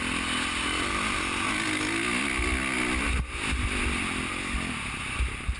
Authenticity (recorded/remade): recorded